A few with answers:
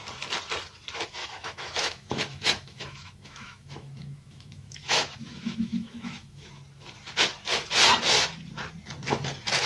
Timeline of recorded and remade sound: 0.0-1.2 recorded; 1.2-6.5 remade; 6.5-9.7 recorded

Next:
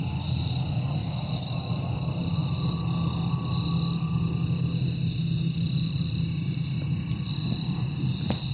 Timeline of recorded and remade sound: 0.0-1.0 recorded; 1.0-1.7 remade; 1.7-8.5 recorded